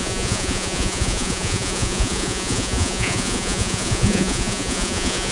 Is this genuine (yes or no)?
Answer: no